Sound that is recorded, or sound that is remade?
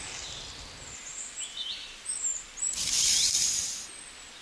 recorded